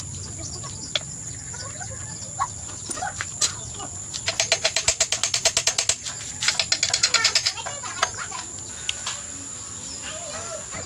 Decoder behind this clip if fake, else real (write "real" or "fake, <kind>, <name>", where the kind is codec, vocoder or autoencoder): real